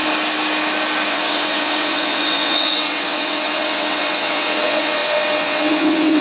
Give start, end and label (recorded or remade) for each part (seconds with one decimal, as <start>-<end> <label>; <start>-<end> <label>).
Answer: 0.0-1.1 recorded; 1.1-6.2 remade